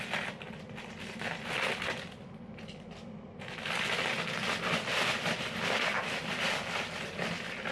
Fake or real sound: real